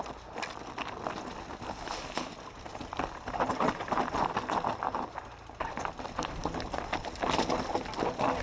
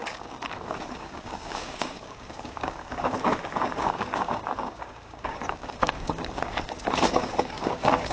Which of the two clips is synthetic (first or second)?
second